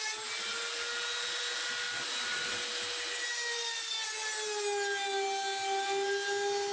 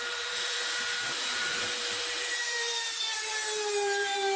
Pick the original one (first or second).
first